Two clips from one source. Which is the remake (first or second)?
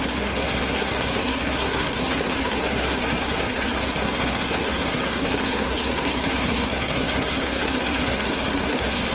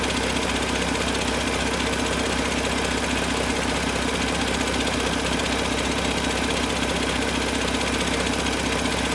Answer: first